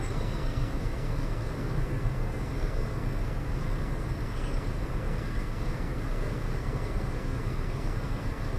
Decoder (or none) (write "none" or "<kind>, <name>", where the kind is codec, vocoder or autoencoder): codec, SNAC